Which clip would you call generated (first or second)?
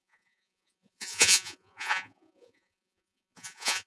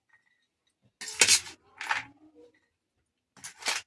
first